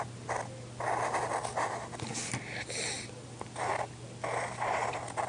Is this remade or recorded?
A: recorded